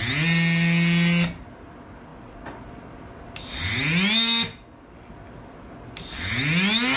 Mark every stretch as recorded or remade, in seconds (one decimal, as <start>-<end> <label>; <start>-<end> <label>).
0.0-7.0 recorded